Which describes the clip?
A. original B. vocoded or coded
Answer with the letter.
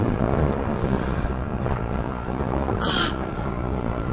B